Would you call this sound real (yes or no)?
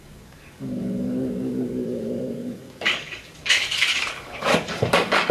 no